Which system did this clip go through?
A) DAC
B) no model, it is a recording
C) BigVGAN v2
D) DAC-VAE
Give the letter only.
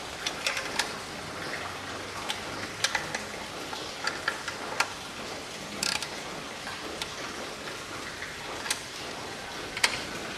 B